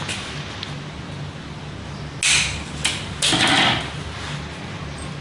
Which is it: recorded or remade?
recorded